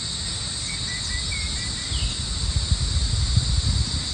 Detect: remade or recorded recorded